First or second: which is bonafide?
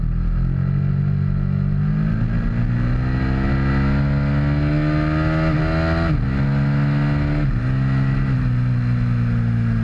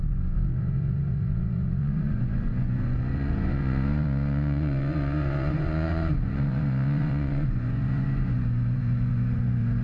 first